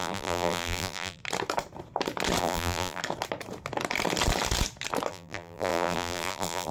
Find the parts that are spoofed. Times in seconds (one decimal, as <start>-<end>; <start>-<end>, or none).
0.0-1.2; 2.4-3.0; 5.1-6.7